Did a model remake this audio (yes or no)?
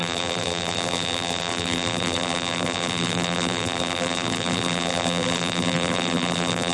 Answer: yes